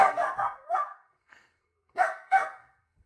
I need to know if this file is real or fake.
fake